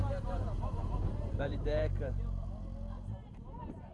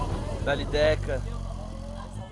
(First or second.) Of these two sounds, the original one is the second